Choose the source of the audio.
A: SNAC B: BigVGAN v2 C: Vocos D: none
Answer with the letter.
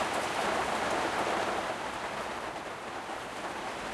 D